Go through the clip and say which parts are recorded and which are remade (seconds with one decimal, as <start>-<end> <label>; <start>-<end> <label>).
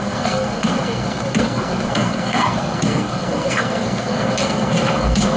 0.0-5.4 remade